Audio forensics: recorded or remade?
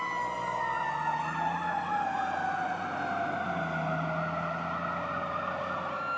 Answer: recorded